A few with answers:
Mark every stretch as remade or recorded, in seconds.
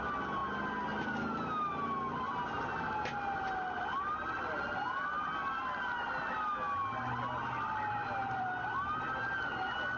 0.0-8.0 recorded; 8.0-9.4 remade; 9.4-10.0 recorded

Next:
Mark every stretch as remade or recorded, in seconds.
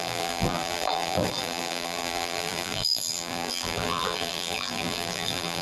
0.0-5.6 remade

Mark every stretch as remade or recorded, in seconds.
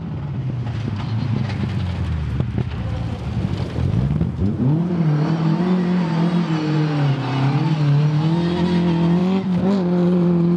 0.0-4.4 recorded; 4.4-5.6 remade; 5.6-9.2 recorded; 9.2-10.6 remade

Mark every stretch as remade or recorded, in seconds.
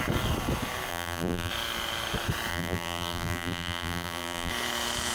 0.0-0.9 recorded; 0.9-1.5 remade; 1.5-2.5 recorded; 2.5-4.5 remade; 4.5-5.1 recorded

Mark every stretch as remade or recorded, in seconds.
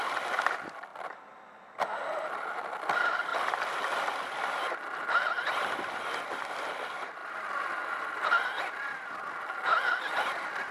0.0-7.2 recorded; 7.2-9.1 remade; 9.1-10.7 recorded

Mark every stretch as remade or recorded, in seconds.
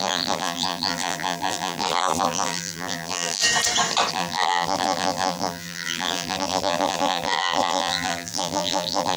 0.0-3.4 remade; 3.4-4.1 recorded; 4.1-9.2 remade